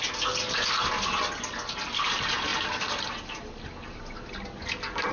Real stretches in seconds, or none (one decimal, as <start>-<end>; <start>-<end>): 0.0-5.1